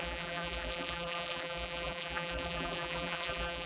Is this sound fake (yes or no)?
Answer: yes